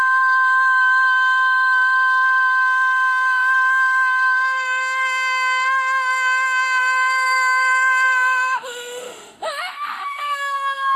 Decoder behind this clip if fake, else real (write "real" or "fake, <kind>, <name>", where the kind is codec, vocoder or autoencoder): fake, autoencoder, DAC-VAE